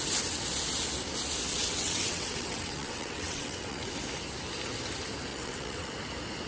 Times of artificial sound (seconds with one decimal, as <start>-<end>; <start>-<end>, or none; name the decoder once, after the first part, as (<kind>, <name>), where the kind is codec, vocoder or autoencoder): 1.5-3.9 (vocoder, WaveNeXt); 5.3-5.9